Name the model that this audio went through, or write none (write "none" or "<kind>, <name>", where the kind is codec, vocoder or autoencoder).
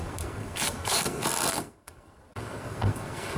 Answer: codec, SNAC